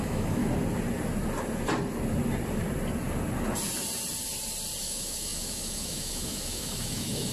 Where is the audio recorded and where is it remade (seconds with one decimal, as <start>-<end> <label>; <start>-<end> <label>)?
0.0-0.4 remade; 0.4-4.8 recorded; 4.8-7.3 remade